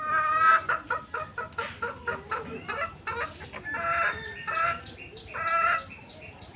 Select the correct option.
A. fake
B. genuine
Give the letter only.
B